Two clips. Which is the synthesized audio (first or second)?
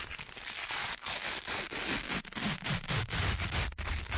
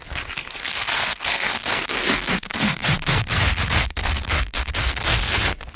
second